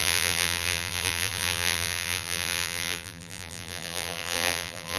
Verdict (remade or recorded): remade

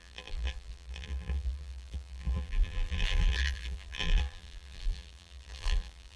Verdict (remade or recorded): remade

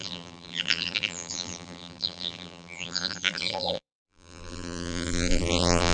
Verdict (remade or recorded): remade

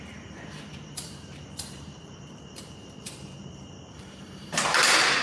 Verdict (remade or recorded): remade